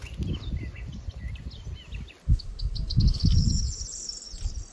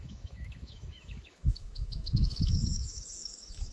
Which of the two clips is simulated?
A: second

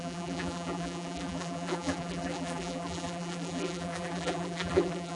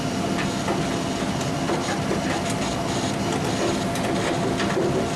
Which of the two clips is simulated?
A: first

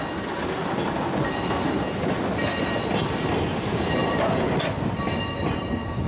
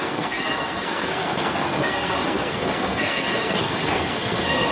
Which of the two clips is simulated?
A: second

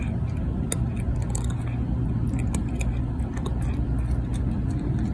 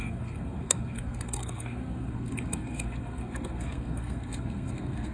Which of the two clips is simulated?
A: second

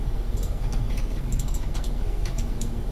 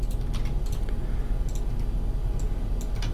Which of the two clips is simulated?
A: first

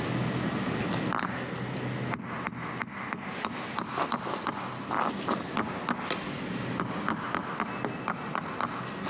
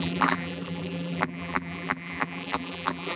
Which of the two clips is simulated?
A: second